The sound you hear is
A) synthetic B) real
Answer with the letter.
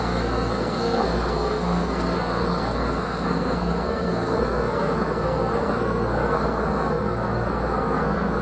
A